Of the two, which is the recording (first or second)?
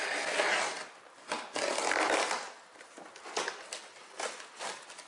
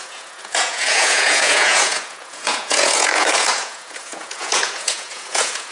first